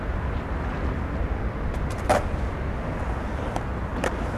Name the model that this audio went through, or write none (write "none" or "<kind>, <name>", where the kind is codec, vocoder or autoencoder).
none